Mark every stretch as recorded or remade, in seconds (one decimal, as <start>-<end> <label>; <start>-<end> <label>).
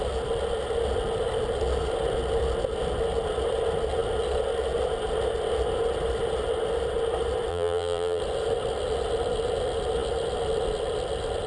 0.0-7.5 recorded; 7.5-8.2 remade; 8.2-11.5 recorded